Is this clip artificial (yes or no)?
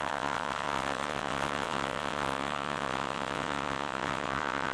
yes